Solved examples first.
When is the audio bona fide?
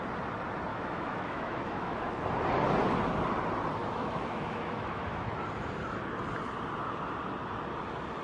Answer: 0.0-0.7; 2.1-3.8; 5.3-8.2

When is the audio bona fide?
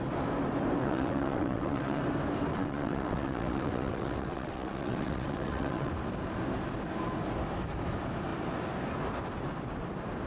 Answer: 0.0-0.8; 2.0-2.5; 5.9-10.3